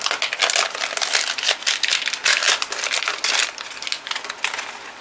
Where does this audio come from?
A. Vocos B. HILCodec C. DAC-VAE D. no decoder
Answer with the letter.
D